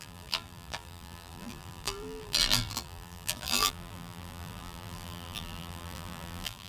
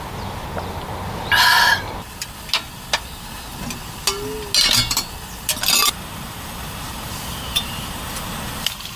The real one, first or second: second